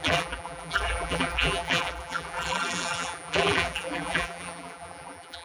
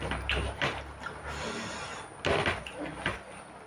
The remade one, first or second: first